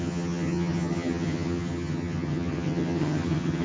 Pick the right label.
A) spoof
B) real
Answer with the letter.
A